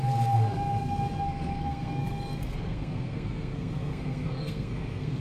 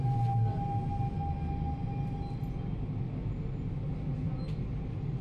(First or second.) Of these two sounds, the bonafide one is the second